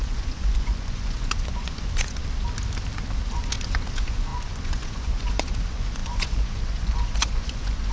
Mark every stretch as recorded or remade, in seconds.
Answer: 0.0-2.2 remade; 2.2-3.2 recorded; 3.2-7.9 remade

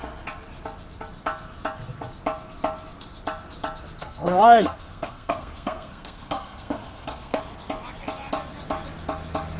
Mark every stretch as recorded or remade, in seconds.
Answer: 0.0-4.0 recorded; 4.0-7.4 remade; 7.4-9.6 recorded

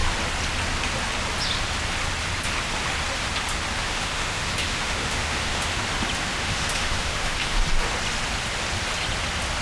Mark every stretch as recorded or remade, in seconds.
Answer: 0.0-3.7 recorded; 3.7-5.8 remade; 5.8-6.3 recorded; 6.3-7.6 remade; 7.6-9.6 recorded

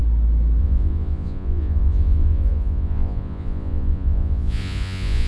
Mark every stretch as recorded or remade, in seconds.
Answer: 0.0-0.6 recorded; 0.6-5.3 remade

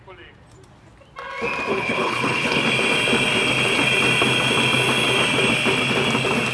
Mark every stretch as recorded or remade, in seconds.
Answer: 0.0-1.7 recorded; 1.7-2.6 remade; 2.6-6.5 recorded

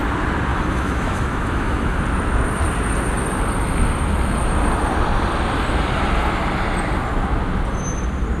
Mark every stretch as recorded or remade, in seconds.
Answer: 0.0-0.5 recorded; 0.5-2.0 remade; 2.0-8.4 recorded

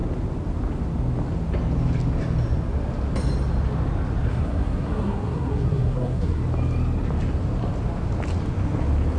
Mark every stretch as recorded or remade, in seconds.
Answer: 0.0-4.3 recorded; 4.3-6.4 remade; 6.4-9.2 recorded